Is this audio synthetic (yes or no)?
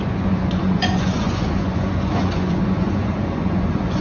yes